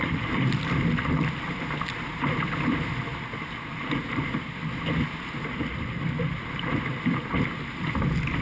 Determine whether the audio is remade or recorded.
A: recorded